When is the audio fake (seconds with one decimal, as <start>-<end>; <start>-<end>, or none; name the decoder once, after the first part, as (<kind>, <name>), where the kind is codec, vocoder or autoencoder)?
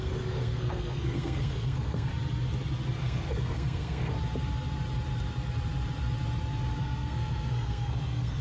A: 0.0-2.1 (codec, SNAC); 3.0-4.1; 6.8-8.4